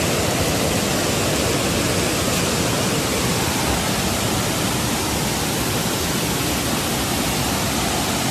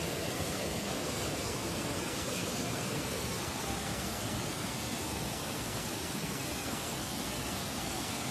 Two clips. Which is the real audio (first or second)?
first